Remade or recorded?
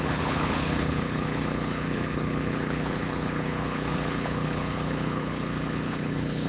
remade